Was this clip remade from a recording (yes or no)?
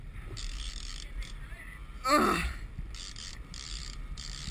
no